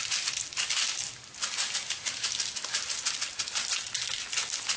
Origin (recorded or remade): recorded